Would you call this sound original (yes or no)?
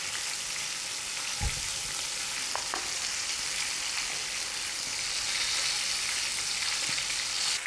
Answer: yes